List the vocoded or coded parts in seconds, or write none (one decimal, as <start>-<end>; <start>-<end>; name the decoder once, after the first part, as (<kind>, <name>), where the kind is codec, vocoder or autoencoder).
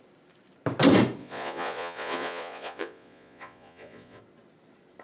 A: 1.2-4.2 (vocoder, Vocos)